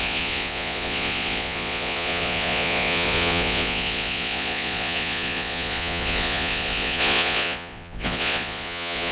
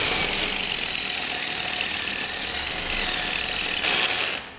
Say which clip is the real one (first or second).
second